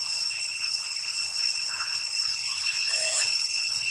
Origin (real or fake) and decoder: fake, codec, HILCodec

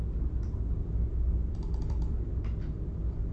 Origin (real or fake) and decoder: real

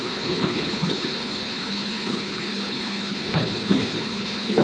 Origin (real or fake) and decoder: fake, codec, HILCodec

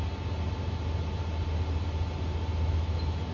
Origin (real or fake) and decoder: real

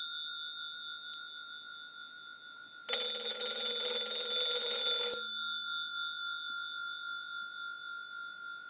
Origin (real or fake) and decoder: real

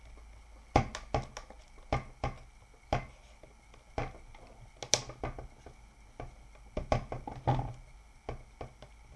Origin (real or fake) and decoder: real